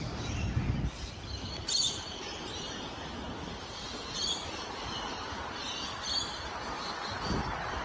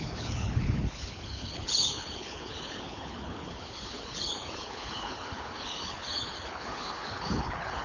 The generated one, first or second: second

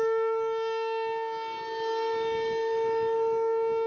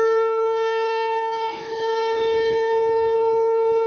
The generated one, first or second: second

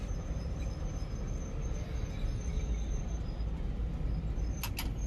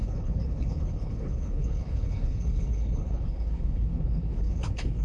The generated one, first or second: second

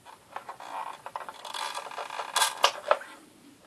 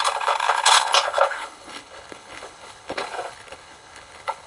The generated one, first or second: second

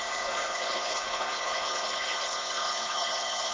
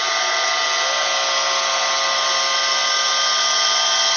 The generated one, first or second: first